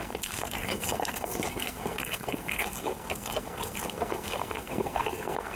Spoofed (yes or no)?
yes